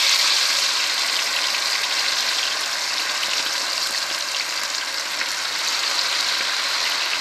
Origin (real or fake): real